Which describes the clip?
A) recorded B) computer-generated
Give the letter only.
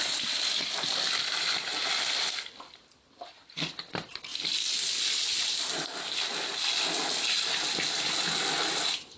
A